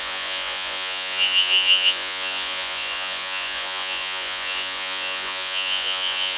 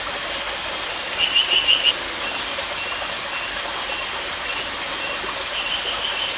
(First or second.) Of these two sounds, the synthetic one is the first